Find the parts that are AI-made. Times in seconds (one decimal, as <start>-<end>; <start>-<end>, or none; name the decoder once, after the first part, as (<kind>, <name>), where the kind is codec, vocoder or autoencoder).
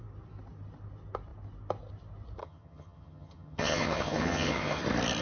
2.4-4.8 (vocoder, HiFi-GAN)